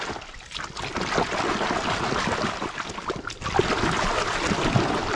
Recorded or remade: recorded